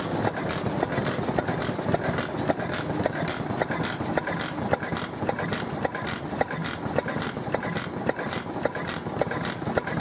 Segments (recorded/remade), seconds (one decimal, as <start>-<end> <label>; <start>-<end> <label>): 0.0-10.0 recorded